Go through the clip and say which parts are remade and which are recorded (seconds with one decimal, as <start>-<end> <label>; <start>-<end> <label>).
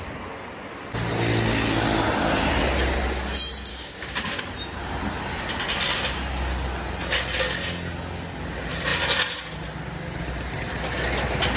0.0-3.7 recorded; 3.7-4.4 remade; 4.4-11.6 recorded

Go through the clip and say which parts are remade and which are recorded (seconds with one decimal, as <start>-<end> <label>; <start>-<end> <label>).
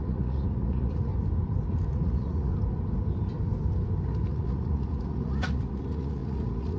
0.0-1.1 remade; 1.1-1.9 recorded; 1.9-2.5 remade; 2.5-4.3 recorded; 4.3-6.8 remade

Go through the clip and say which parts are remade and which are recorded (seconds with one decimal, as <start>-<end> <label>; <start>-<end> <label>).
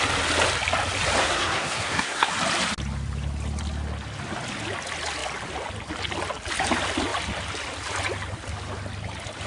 0.0-1.2 recorded; 1.2-2.3 remade; 2.3-9.5 recorded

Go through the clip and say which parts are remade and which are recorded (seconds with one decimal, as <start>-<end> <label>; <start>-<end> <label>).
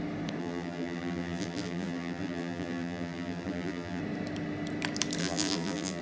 0.0-0.4 recorded; 0.4-4.0 remade; 4.0-5.2 recorded; 5.2-6.0 remade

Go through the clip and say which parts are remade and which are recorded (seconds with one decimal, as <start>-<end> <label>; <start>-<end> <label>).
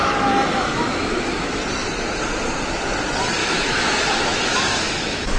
0.0-1.6 remade; 1.6-3.4 recorded; 3.4-5.4 remade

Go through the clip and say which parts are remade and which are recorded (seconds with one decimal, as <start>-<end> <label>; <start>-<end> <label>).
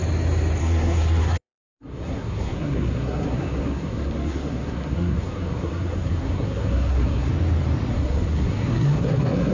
0.0-0.6 recorded; 0.6-7.3 remade; 7.3-7.9 recorded; 7.9-9.5 remade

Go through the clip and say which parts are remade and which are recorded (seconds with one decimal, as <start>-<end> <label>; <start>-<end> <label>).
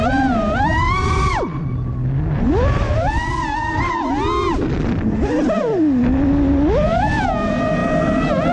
0.0-8.5 recorded